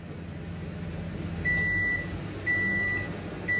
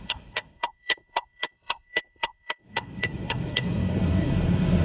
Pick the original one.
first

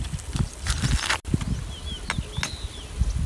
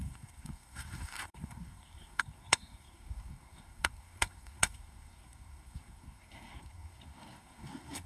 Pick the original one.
first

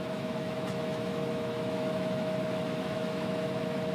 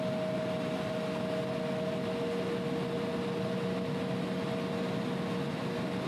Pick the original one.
second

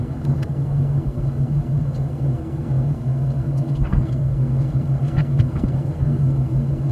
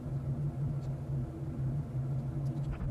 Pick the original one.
second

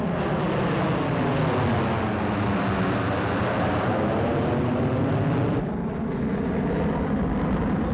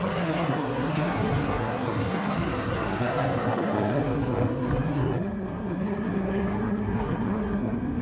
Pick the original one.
first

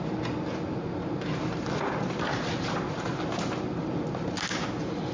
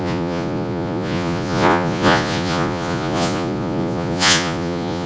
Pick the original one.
first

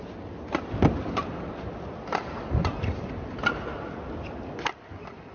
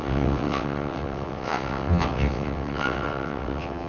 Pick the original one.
first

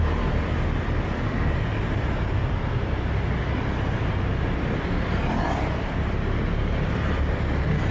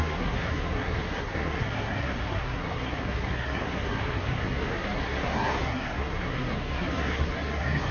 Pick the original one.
first